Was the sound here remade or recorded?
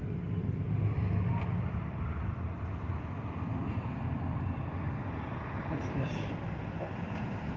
recorded